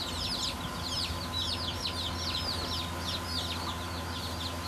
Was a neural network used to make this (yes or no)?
no